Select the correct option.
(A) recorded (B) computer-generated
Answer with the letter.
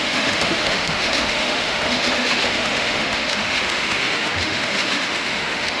B